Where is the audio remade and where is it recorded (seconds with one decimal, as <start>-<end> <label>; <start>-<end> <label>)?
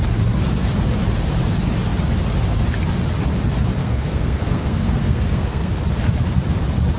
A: 0.0-3.8 recorded; 3.8-5.7 remade; 5.7-7.0 recorded